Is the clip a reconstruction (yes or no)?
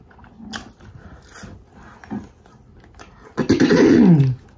no